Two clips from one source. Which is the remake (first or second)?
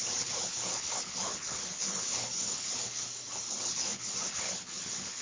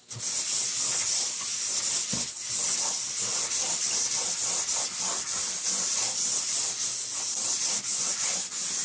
first